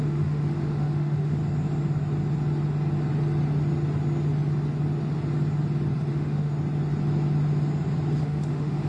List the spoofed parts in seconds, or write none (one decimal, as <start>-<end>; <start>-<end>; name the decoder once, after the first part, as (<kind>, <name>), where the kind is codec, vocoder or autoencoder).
0.0-1.4 (autoencoder, DAC-VAE); 6.1-6.5; 8.2-8.9